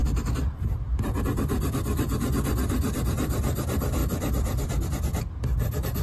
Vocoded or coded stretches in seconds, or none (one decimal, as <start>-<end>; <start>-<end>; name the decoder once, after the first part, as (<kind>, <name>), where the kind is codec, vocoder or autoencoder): 0.0-2.9 (vocoder, BigVGAN v2); 4.0-5.2